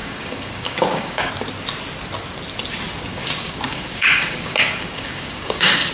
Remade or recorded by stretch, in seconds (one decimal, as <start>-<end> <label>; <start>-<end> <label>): 0.0-1.3 remade; 1.3-3.1 recorded; 3.1-5.9 remade